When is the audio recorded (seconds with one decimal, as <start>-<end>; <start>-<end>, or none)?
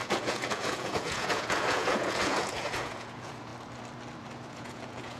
3.5-4.5